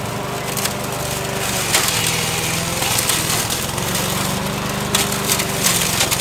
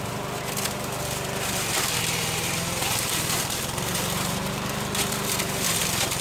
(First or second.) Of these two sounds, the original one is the first